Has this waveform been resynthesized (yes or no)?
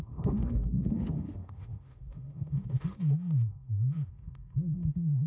yes